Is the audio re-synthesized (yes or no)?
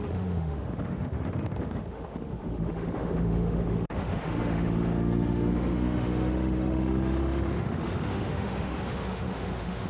yes